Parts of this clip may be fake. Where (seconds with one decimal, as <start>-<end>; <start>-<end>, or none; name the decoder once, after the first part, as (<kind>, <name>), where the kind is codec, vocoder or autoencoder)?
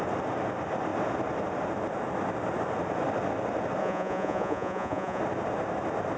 3.8-5.2 (vocoder, Vocos)